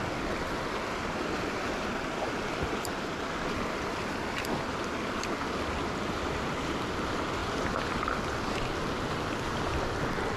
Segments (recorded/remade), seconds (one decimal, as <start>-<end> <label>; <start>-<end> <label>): 0.0-10.4 recorded